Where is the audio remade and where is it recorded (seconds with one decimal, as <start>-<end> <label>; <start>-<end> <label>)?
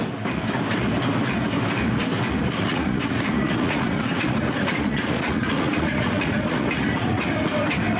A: 0.0-2.4 recorded; 2.4-7.2 remade; 7.2-8.0 recorded